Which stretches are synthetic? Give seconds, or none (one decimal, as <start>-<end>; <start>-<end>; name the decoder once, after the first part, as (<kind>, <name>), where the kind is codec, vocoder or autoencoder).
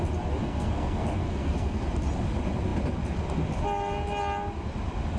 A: 0.4-1.8 (codec, SNAC)